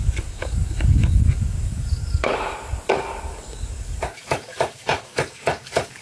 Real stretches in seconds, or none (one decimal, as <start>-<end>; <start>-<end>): 2.3-2.9